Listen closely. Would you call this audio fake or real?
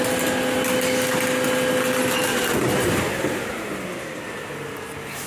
real